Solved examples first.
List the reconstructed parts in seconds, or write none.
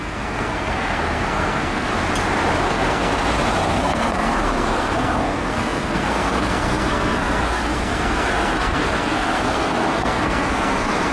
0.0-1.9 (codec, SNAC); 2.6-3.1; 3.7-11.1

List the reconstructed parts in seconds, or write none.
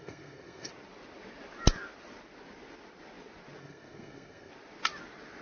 0.0-0.7 (codec, SNAC); 3.6-4.5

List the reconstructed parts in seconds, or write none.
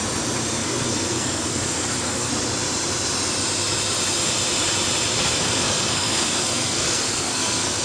0.6-2.3 (codec, SNAC); 5.2-7.8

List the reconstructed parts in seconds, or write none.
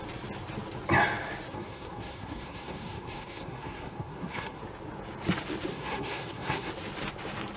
1.5-4.6 (codec, SNAC); 5.7-6.7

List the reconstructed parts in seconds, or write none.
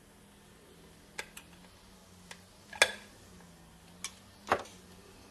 none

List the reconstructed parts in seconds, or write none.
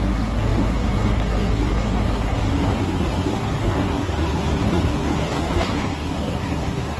0.0-7.0 (codec, SNAC)